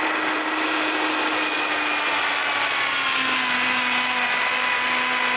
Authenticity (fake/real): real